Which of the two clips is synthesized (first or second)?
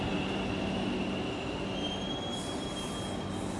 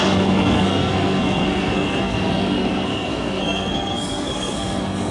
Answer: second